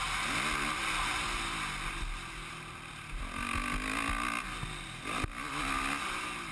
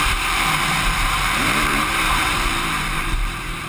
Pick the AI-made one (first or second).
second